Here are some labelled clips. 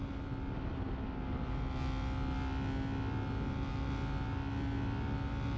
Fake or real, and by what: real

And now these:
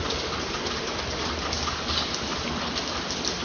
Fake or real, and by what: real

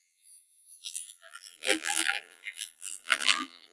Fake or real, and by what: fake, vocoder, BigVGAN v2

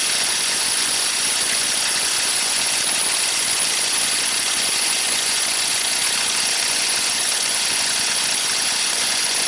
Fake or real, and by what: fake, vocoder, Vocos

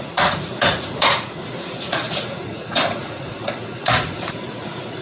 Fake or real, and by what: fake, vocoder, Vocos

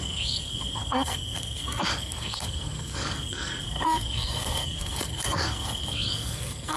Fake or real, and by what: fake, codec, SNAC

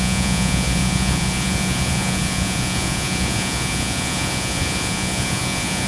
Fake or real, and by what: fake, vocoder, Vocos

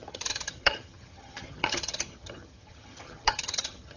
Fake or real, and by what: fake, vocoder, HiFi-GAN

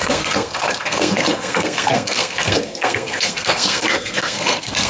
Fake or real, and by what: fake, codec, SNAC